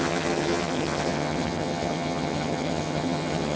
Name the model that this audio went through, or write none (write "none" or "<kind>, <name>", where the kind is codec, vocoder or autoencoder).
vocoder, HiFi-GAN